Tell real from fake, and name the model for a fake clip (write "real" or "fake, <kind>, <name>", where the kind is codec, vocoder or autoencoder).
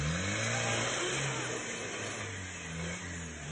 real